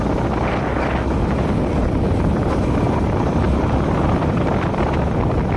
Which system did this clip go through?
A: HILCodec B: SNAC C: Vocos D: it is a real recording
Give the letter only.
D